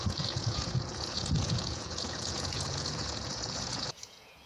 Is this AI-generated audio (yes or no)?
yes